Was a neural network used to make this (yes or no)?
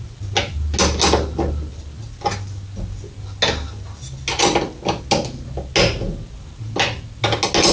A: no